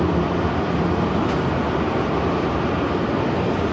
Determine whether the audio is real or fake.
real